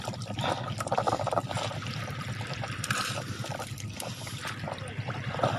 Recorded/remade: remade